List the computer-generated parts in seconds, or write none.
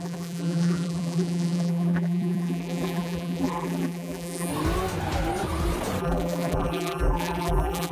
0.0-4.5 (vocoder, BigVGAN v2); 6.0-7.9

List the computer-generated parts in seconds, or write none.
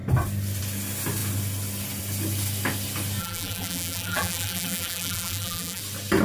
3.2-5.8 (vocoder, BigVGAN v2)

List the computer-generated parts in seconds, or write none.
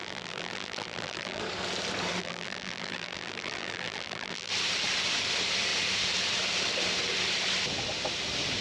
0.0-1.4 (vocoder, BigVGAN v2); 2.2-4.5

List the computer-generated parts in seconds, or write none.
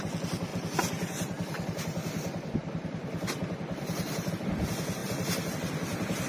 0.5-4.3 (vocoder, BigVGAN v2); 5.0-5.5